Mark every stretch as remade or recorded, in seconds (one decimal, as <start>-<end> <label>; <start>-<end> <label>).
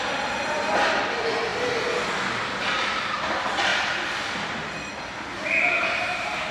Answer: 0.0-6.5 recorded